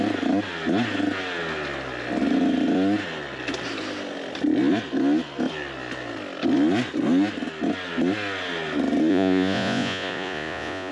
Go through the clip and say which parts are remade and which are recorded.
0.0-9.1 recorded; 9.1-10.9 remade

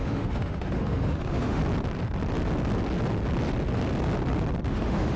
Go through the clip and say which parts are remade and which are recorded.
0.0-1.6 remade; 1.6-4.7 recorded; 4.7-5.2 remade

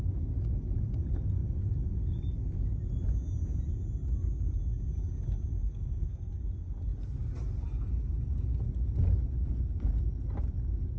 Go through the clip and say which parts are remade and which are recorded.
0.0-5.6 recorded; 5.6-6.3 remade; 6.3-11.0 recorded

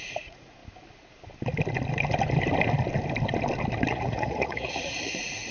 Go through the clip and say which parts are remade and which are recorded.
0.0-0.6 remade; 0.6-3.9 recorded; 3.9-5.5 remade